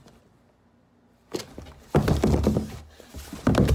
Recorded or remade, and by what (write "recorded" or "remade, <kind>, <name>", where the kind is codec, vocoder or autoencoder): recorded